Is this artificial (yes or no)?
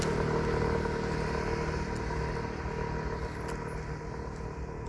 no